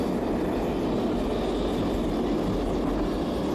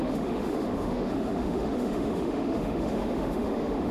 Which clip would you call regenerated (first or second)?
second